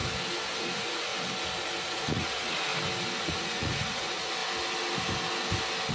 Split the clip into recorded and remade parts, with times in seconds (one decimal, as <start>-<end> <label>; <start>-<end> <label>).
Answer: 0.0-0.6 recorded; 0.6-1.1 remade; 1.1-1.8 recorded; 1.8-2.7 remade; 2.7-3.2 recorded; 3.2-4.4 remade; 4.4-5.9 recorded